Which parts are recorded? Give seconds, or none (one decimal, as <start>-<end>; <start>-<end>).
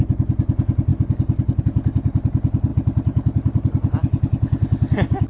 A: 0.0-5.3